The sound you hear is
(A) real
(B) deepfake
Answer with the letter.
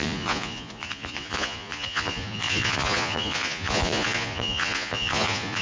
B